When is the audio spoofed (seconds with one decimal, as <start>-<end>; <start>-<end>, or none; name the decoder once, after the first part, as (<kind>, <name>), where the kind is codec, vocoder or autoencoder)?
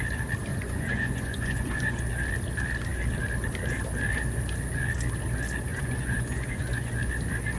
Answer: 0.5-2.0 (vocoder, Vocos); 5.7-6.9